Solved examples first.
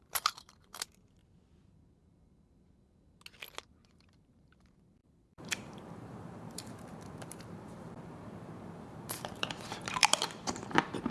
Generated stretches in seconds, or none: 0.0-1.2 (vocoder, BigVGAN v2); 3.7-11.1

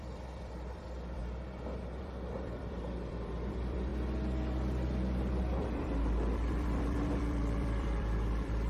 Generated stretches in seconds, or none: 0.0-1.2 (vocoder, BigVGAN v2); 2.0-3.9; 5.4-8.7

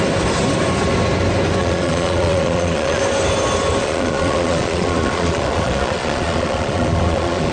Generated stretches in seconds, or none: 1.6-3.0 (vocoder, Vocos); 3.8-7.5

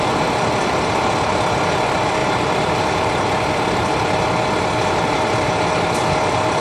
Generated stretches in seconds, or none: 2.2-3.5 (vocoder, BigVGAN v2)